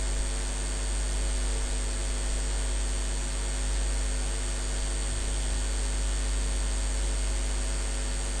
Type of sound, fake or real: real